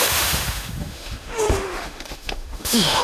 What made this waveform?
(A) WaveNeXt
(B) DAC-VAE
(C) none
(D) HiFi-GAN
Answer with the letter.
B